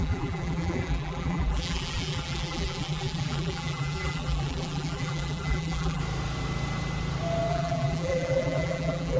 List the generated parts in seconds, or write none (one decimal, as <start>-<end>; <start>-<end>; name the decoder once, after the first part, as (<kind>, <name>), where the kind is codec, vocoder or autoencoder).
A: 0.0-6.0 (vocoder, BigVGAN v2); 7.5-9.2